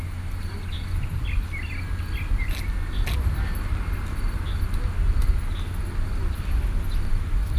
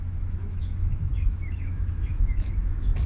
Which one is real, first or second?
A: first